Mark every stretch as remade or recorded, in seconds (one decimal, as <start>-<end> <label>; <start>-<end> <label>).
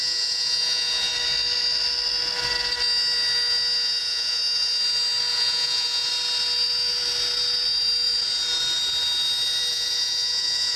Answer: 0.0-1.1 remade; 1.1-4.0 recorded; 4.0-4.4 remade; 4.4-5.3 recorded; 5.3-6.1 remade; 6.1-9.7 recorded; 9.7-10.8 remade